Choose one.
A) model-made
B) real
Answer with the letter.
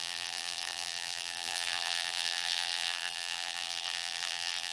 A